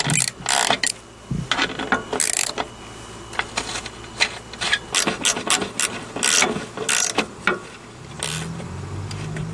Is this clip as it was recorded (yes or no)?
yes